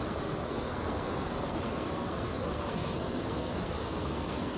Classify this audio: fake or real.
fake